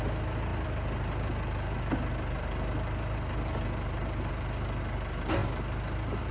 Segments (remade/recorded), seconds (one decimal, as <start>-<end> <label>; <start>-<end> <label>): 0.0-6.3 recorded